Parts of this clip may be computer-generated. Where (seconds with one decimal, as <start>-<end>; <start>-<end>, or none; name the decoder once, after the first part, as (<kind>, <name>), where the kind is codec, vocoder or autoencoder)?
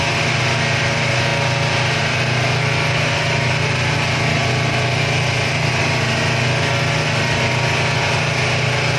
none